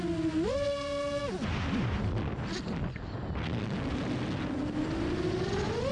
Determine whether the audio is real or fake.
real